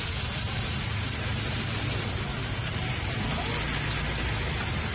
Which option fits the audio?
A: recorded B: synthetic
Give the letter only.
A